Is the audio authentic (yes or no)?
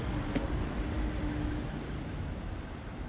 yes